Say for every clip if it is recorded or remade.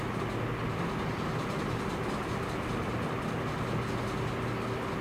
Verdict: recorded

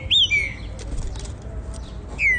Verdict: recorded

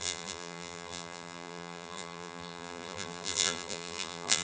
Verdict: remade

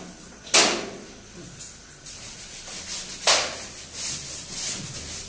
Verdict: recorded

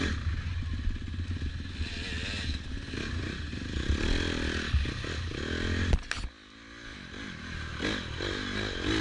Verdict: recorded